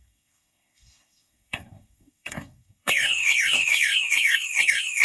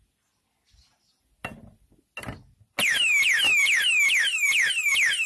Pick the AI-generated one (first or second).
first